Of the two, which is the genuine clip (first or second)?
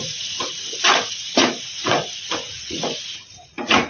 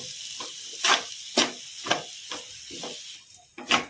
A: second